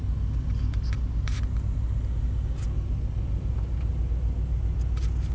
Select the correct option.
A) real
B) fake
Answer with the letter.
A